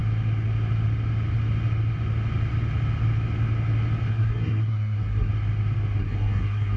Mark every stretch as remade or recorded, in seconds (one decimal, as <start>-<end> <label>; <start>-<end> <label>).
0.0-4.1 recorded; 4.1-5.3 remade; 5.3-6.0 recorded; 6.0-6.8 remade